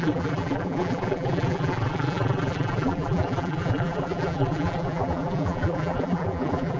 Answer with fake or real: fake